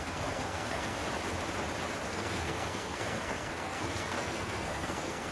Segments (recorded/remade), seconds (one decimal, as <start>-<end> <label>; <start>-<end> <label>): 0.0-1.0 remade; 1.0-2.1 recorded; 2.1-5.3 remade